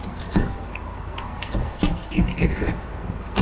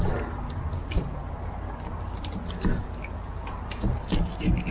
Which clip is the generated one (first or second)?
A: first